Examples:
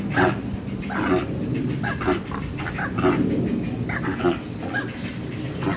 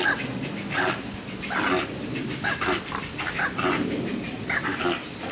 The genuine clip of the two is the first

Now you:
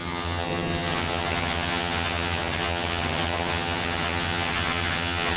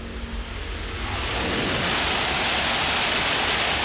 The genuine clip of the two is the second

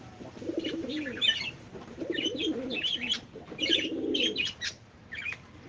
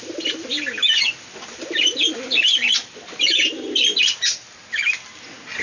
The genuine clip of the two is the second